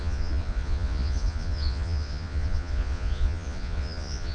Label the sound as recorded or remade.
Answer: remade